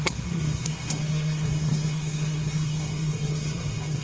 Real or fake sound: fake